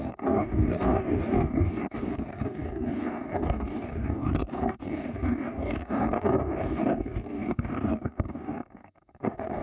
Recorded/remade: remade